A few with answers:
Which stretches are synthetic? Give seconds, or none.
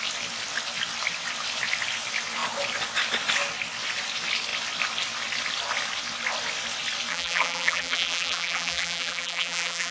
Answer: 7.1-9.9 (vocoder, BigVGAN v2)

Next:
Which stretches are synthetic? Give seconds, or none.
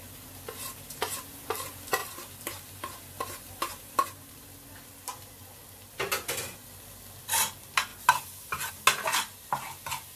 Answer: 2.0-4.3 (vocoder, BigVGAN v2)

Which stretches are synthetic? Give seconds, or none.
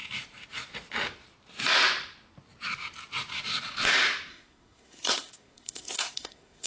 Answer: 4.3-6.7 (codec, SNAC)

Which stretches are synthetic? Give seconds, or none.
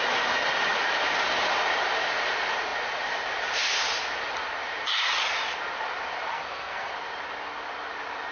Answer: 6.3-6.9 (codec, SNAC)